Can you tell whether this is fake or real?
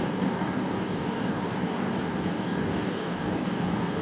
fake